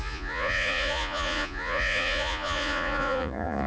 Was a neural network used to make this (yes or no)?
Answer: yes